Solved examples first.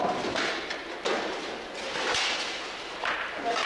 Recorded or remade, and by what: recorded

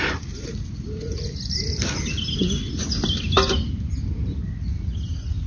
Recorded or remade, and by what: recorded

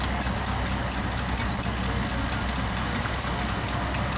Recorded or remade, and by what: recorded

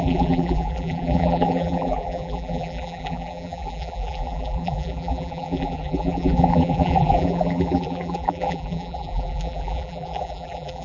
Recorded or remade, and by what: remade, vocoder, BigVGAN v2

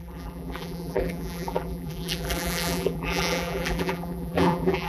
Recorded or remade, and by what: remade, vocoder, BigVGAN v2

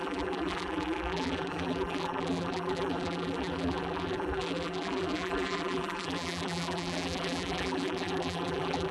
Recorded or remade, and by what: remade, vocoder, BigVGAN v2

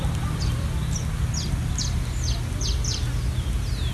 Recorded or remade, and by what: recorded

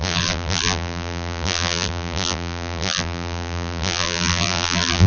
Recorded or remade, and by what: remade, vocoder, BigVGAN v2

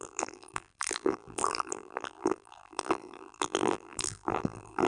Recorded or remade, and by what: remade, vocoder, BigVGAN v2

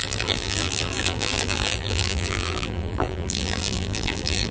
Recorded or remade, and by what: remade, vocoder, BigVGAN v2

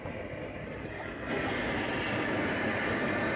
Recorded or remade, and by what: remade, vocoder, BigVGAN v2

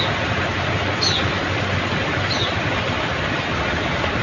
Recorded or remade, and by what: recorded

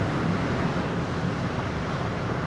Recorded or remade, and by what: recorded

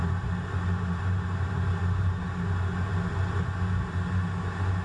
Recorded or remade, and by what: recorded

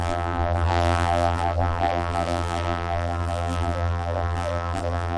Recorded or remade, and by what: remade, vocoder, BigVGAN v2